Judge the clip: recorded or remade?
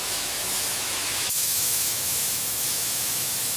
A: remade